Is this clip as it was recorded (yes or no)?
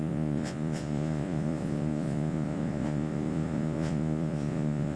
no